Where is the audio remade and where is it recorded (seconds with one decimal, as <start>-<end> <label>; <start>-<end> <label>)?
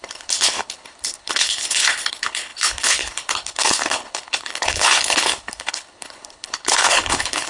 0.0-7.5 remade